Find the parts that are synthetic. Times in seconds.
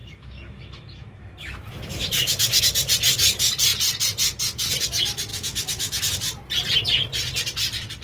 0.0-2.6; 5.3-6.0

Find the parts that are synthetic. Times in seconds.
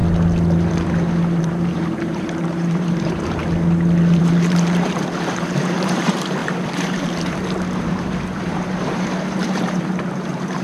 1.4-3.4; 4.2-10.6